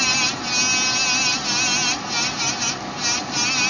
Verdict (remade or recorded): recorded